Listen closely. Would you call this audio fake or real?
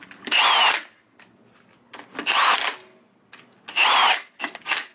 real